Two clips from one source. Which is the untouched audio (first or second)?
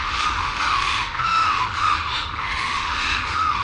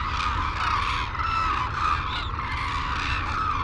second